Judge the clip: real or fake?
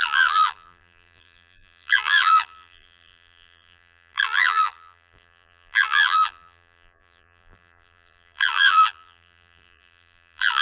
fake